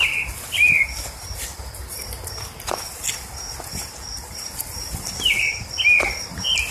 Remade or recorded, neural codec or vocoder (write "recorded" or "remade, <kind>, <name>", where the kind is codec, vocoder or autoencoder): recorded